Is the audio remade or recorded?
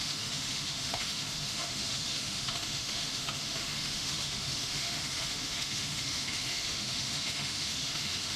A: remade